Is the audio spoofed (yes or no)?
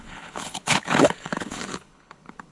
yes